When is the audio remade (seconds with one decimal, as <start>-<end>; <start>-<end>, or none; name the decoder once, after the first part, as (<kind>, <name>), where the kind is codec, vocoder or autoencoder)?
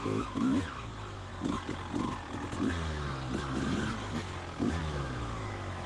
0.0-1.3 (autoencoder, DAC-VAE); 4.8-5.9